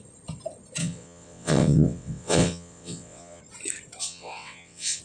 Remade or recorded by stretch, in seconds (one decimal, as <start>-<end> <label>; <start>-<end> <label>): 0.0-0.8 recorded; 0.8-3.4 remade; 3.4-4.0 recorded; 4.0-5.0 remade